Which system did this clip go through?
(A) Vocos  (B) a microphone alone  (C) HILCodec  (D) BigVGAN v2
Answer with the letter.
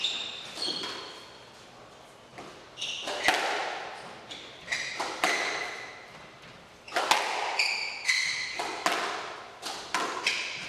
B